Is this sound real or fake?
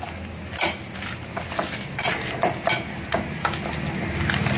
real